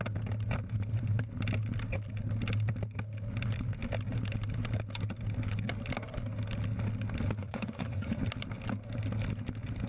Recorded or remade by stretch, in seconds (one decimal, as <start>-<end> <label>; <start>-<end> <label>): 0.0-7.4 recorded; 7.4-8.2 remade; 8.2-9.9 recorded